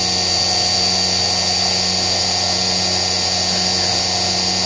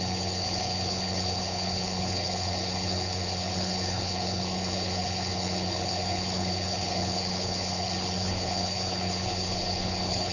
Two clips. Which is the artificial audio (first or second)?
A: second